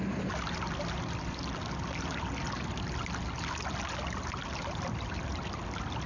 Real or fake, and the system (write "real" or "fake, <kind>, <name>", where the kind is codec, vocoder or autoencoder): real